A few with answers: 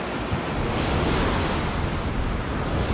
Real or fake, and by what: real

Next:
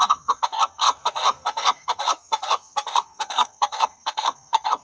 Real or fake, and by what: fake, codec, SNAC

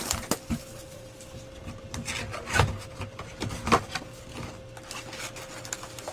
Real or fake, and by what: real